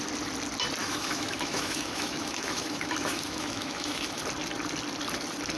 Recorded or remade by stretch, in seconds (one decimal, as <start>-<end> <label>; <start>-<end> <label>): 0.0-0.8 recorded; 0.8-4.2 remade; 4.2-5.6 recorded